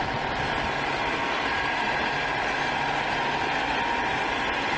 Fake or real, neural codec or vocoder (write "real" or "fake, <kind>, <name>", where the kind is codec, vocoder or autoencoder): real